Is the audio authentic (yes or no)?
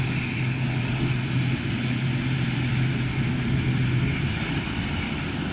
yes